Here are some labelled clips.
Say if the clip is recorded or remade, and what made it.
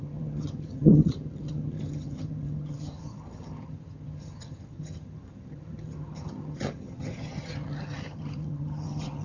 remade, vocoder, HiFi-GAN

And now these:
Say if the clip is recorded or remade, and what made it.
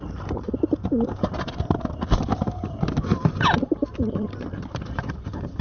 remade, vocoder, BigVGAN v2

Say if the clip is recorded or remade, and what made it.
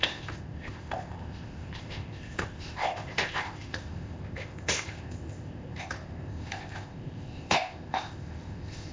remade, codec, ZipCodec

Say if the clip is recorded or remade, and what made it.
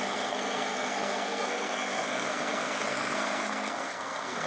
remade, codec, SNAC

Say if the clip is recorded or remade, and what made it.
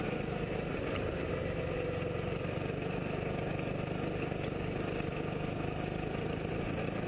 recorded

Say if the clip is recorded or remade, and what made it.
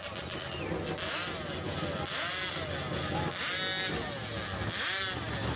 recorded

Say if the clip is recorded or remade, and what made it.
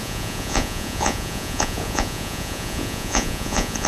remade, vocoder, Vocos